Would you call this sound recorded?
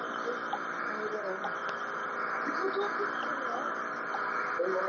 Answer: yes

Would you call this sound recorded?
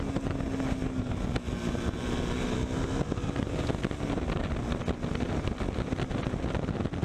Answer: yes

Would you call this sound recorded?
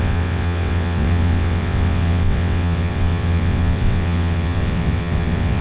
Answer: no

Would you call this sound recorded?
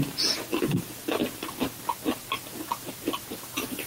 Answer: yes